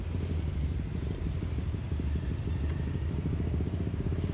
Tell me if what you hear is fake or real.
real